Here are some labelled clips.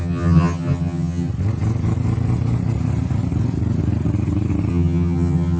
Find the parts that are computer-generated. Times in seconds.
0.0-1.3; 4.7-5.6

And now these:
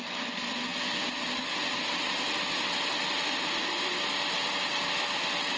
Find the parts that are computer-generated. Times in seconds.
none

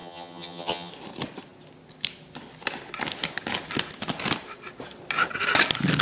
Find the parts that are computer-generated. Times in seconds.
0.0-0.9

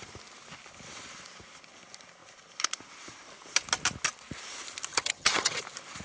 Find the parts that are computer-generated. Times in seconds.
4.9-5.6

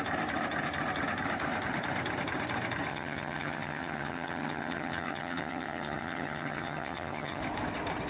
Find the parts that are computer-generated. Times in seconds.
2.9-7.4

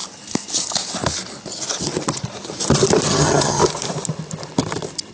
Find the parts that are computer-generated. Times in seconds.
3.1-3.6